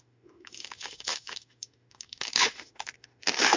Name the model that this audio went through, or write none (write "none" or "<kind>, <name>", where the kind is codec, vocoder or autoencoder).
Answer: autoencoder, DAC-VAE